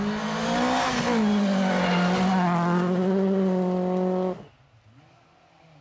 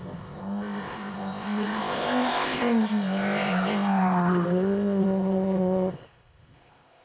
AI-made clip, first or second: second